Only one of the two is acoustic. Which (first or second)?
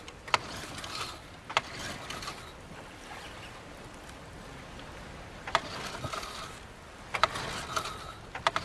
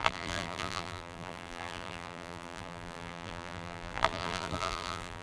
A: first